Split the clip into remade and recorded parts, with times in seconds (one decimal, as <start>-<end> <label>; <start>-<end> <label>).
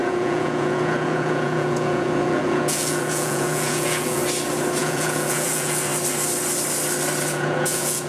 0.0-4.2 remade; 4.2-4.8 recorded; 4.8-5.9 remade; 5.9-7.3 recorded; 7.3-8.1 remade